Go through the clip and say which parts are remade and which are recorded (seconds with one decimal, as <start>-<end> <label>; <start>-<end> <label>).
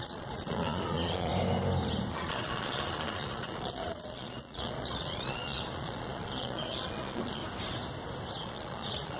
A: 0.0-1.3 remade; 1.3-2.1 recorded; 2.1-7.4 remade; 7.4-8.4 recorded; 8.4-9.2 remade